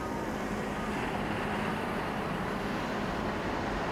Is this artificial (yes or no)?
no